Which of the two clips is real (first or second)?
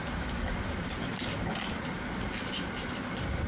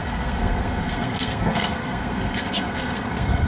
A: first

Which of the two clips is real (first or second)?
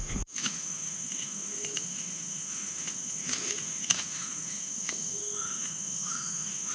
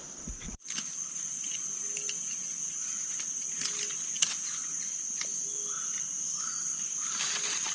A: second